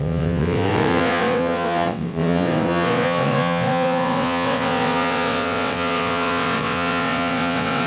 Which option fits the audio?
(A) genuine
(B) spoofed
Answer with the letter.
B